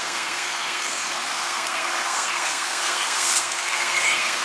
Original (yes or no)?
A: no